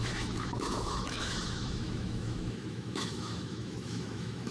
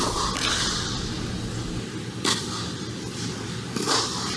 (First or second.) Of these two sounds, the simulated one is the first